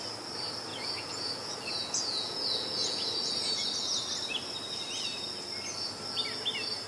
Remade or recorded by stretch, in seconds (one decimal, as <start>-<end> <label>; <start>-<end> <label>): 0.0-0.7 recorded; 0.7-3.3 remade; 3.3-6.9 recorded